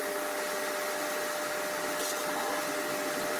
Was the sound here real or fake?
real